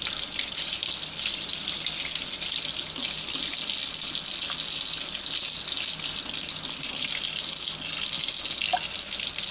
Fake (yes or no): no